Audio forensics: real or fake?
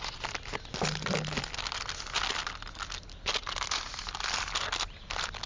real